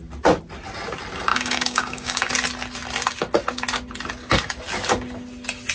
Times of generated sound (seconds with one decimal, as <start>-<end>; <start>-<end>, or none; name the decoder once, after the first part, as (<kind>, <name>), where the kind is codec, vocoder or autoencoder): 1.3-2.3 (codec, DAC)